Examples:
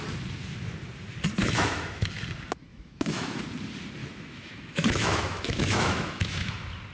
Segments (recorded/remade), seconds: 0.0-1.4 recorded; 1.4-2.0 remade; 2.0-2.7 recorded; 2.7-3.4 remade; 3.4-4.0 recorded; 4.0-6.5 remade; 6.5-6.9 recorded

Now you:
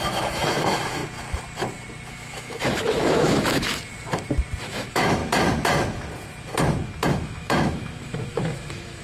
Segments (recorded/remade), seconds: 0.0-1.0 remade; 1.0-2.1 recorded; 2.1-3.7 remade; 3.7-4.6 recorded; 4.6-5.2 remade; 5.2-7.1 recorded; 7.1-9.0 remade

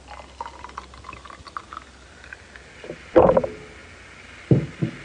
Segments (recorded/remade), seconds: 0.0-5.0 recorded

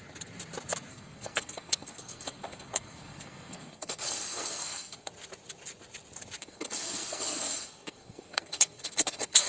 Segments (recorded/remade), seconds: 0.0-0.9 recorded; 0.9-5.1 remade; 5.1-6.4 recorded; 6.4-9.5 remade

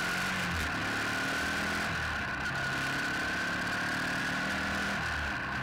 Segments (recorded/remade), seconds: 0.0-5.6 recorded